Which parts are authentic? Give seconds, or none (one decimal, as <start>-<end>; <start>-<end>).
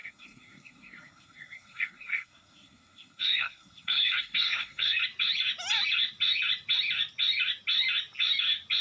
5.0-8.8